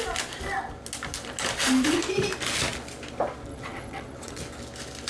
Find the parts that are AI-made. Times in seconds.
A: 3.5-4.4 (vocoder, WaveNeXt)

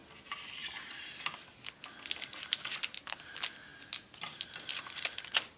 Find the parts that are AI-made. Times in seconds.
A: none

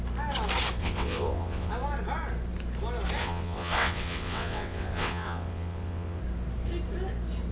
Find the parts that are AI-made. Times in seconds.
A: 0.8-1.7 (vocoder, WaveNeXt); 3.2-6.2

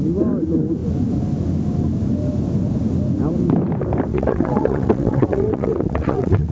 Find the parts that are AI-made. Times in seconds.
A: 4.1-6.5 (vocoder, WaveNeXt)